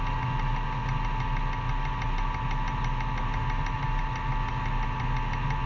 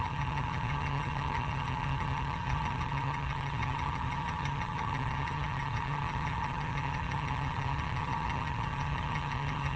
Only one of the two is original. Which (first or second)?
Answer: first